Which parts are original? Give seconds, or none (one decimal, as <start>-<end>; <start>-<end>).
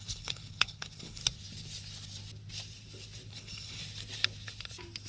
1.2-3.3; 3.8-5.1